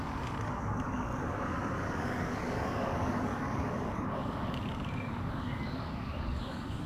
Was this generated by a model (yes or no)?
yes